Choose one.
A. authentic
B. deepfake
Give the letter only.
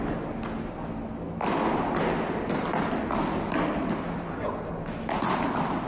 A